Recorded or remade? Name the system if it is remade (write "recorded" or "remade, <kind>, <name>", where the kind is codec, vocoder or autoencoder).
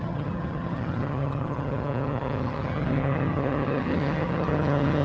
remade, vocoder, HiFi-GAN